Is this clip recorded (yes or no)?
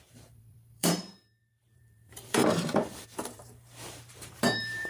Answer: no